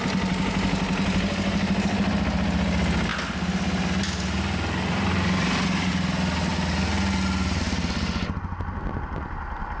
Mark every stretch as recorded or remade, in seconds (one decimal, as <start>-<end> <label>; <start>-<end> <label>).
0.0-9.8 recorded